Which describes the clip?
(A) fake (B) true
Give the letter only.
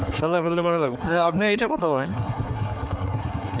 A